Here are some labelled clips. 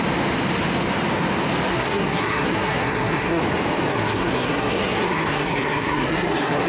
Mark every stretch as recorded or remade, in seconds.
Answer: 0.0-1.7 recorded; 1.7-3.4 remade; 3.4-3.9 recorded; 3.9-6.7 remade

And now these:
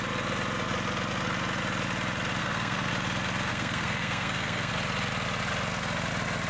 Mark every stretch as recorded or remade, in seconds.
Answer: 0.0-2.4 recorded; 2.4-2.9 remade; 2.9-3.5 recorded; 3.5-4.7 remade; 4.7-6.5 recorded

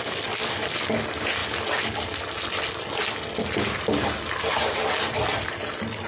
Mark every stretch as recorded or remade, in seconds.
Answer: 0.0-6.1 recorded